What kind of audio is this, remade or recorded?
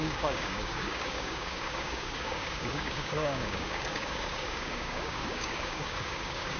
remade